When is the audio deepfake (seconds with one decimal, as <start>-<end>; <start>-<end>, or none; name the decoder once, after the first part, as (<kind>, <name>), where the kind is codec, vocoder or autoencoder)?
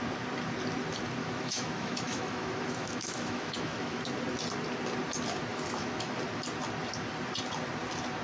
1.2-4.0 (autoencoder, DAC-VAE); 5.5-6.2